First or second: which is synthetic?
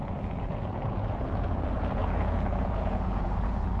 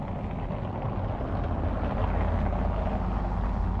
first